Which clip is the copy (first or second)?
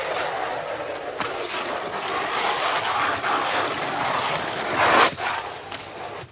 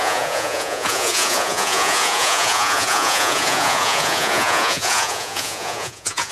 second